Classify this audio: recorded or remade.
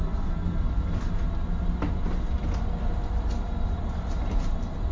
recorded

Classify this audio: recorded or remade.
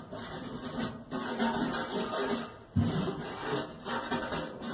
recorded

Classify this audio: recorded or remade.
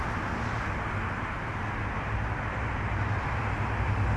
recorded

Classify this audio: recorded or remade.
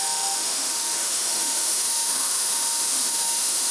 remade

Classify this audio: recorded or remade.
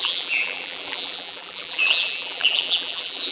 remade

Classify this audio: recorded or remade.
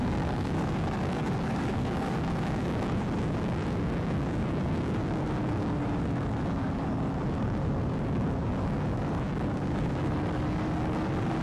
remade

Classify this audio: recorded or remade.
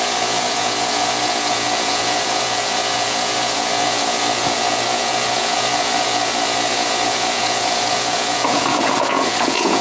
remade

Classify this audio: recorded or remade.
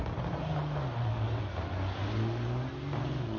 recorded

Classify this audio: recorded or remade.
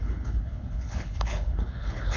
remade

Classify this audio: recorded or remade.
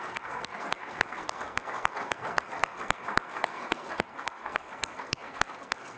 remade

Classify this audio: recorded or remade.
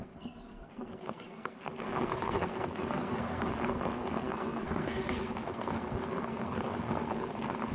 remade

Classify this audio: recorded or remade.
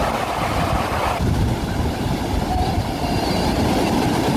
recorded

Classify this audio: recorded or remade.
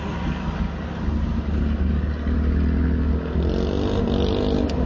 recorded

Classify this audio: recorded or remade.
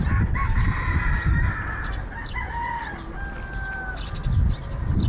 recorded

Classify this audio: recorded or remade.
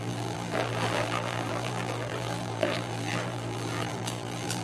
remade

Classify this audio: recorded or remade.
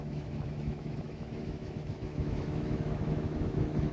remade